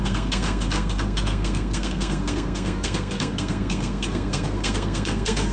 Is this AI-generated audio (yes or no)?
yes